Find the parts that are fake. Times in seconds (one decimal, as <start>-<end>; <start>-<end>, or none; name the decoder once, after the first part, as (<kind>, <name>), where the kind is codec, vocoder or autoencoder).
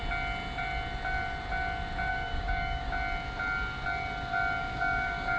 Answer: 2.1-2.9 (codec, DAC); 4.6-5.4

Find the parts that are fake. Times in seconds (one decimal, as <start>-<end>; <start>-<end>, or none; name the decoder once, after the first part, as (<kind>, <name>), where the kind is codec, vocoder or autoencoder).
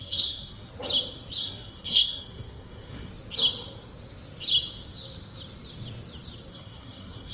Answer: 0.0-0.7 (codec, SNAC); 1.4-3.1; 6.5-7.3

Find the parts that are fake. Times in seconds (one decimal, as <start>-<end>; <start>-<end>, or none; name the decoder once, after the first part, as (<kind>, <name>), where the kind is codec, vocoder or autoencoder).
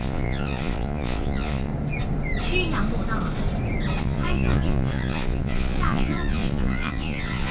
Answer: 0.0-1.7 (vocoder, Vocos); 4.0-7.5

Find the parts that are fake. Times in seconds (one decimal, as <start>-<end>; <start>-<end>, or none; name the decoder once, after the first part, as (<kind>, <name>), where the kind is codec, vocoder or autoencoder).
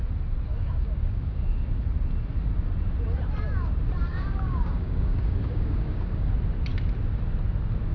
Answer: 0.5-1.7 (codec, DAC); 4.1-6.3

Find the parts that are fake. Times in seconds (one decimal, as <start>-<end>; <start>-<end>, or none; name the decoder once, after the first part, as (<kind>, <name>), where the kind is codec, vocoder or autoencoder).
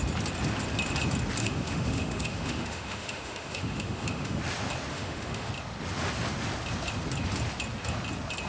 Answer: 1.4-4.4 (autoencoder, DAC-VAE); 4.9-5.5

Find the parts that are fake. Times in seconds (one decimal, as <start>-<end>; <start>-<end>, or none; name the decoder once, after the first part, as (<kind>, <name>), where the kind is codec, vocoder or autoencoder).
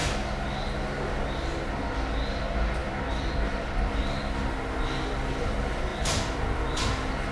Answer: 2.8-4.5 (vocoder, BigVGAN v2); 5.9-6.8